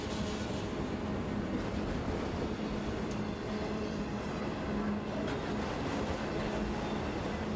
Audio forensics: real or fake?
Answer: real